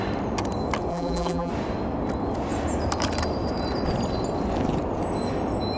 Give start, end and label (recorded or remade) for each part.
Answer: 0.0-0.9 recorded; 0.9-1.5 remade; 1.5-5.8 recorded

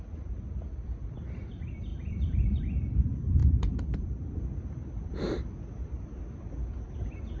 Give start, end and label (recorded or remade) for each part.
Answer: 0.0-1.9 recorded; 1.9-2.6 remade; 2.6-3.4 recorded; 3.4-5.3 remade; 5.3-7.4 recorded

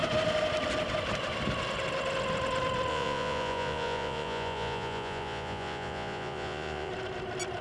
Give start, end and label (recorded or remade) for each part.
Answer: 0.0-2.9 recorded; 2.9-6.9 remade; 6.9-7.6 recorded

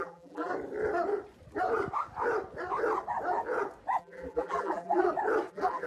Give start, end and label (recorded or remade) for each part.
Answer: 0.0-0.5 remade; 0.5-4.0 recorded; 4.0-5.0 remade; 5.0-5.5 recorded; 5.5-5.9 remade

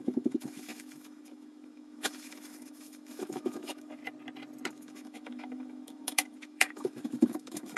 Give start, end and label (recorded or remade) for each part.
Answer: 0.0-4.0 remade; 4.0-4.7 recorded; 4.7-7.8 remade

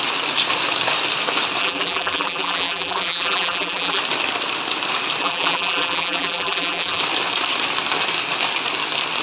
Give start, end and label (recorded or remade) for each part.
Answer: 0.0-1.6 recorded; 1.6-4.0 remade; 4.0-5.2 recorded; 5.2-7.0 remade; 7.0-9.2 recorded

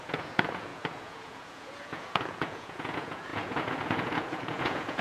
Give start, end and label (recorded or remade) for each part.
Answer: 0.0-5.0 remade